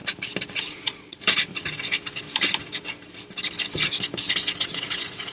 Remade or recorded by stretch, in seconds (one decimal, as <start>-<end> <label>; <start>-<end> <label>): 0.0-0.6 recorded; 0.6-1.5 remade; 1.5-4.7 recorded; 4.7-5.3 remade